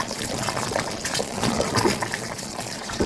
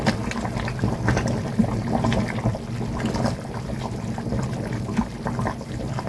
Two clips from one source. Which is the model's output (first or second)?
first